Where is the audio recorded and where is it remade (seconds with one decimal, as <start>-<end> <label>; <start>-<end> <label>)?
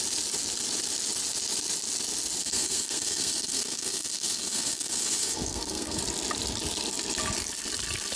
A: 0.0-2.4 recorded; 2.4-6.0 remade; 6.0-8.2 recorded